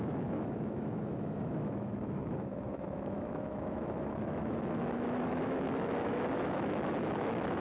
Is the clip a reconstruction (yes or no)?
yes